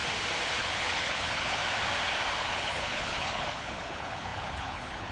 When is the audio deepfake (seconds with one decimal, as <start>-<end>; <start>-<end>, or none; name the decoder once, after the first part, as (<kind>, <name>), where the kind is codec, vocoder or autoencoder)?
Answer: 0.6-1.6 (codec, HILCodec); 2.4-5.1